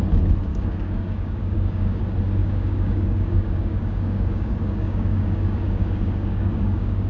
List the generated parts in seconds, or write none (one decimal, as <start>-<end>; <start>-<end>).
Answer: 0.5-2.0; 2.4-7.1

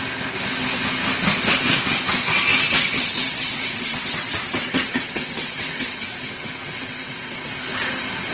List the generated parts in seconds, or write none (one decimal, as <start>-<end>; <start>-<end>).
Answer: 2.5-7.5

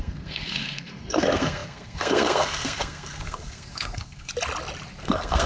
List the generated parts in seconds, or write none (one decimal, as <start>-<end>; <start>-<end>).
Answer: 0.0-4.3; 5.0-5.5